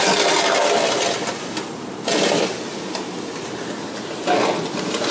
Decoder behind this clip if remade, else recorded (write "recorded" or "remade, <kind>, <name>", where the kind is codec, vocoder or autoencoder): recorded